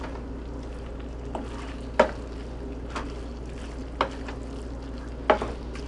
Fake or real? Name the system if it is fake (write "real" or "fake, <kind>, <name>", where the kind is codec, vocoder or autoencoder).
real